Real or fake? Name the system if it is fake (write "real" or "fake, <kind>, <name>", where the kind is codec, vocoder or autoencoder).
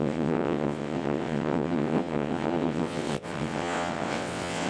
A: fake, vocoder, WaveNeXt